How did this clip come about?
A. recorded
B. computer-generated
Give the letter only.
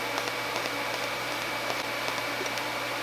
B